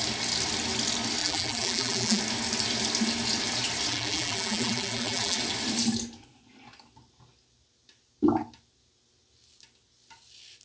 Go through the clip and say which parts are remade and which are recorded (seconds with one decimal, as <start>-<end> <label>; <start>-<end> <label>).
0.0-1.2 recorded; 1.2-2.2 remade; 2.2-3.9 recorded; 3.9-5.4 remade; 5.4-10.6 recorded